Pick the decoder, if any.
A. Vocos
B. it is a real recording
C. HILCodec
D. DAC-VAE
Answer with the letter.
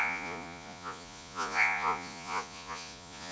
A